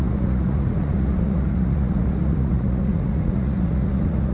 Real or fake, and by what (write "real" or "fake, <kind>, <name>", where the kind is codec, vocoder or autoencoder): fake, vocoder, Vocos